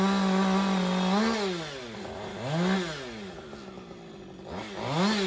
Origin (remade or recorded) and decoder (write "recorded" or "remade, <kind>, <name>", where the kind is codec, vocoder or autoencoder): recorded